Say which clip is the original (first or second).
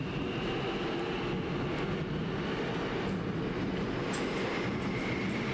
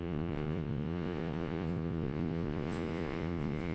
first